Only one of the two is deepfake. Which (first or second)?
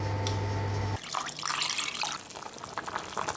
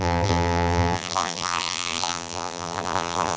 second